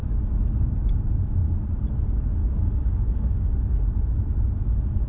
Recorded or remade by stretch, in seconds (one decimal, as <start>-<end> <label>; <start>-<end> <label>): 0.0-2.4 recorded; 2.4-3.5 remade; 3.5-5.1 recorded

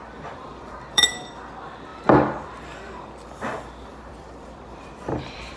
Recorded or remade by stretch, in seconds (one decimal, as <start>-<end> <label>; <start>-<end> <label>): 0.0-1.3 remade; 1.3-3.9 recorded; 3.9-5.6 remade

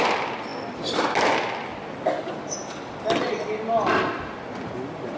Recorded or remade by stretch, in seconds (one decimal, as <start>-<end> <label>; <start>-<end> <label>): 0.0-5.2 recorded